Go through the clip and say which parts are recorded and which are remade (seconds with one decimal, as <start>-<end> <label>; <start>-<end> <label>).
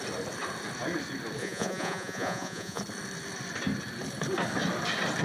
0.0-1.4 recorded; 1.4-2.8 remade; 2.8-5.2 recorded